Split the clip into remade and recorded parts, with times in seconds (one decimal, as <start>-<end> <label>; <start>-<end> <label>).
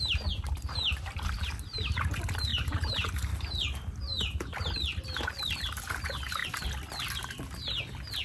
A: 0.0-2.5 recorded; 2.5-3.1 remade; 3.1-8.2 recorded